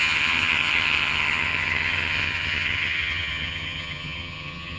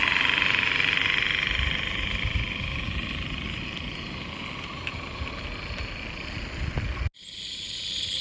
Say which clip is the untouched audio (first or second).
second